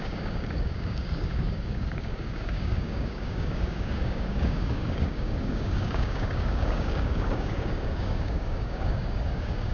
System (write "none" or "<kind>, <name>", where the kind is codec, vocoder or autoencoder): codec, DAC